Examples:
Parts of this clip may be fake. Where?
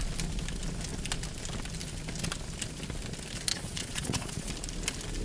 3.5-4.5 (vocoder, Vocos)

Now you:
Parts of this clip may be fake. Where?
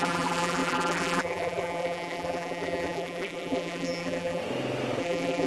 0.0-4.4 (vocoder, BigVGAN v2); 5.0-5.5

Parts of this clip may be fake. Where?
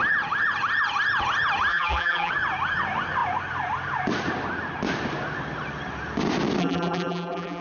1.7-2.3 (vocoder, BigVGAN v2); 6.6-7.6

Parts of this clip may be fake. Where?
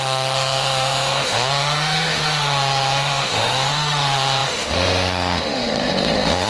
0.0-6.5 (autoencoder, DAC-VAE)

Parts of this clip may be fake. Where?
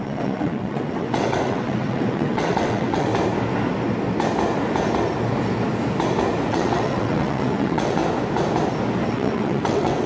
0.0-3.1 (vocoder, WaveNeXt); 6.5-8.0; 9.1-10.1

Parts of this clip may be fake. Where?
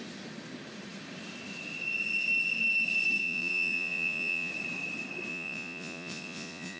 3.2-4.5 (vocoder, Vocos); 5.3-6.8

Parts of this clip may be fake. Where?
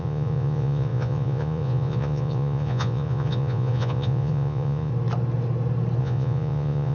0.0-4.9 (vocoder, Vocos); 6.0-6.9